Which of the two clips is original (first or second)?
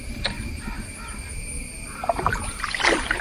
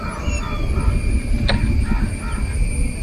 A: second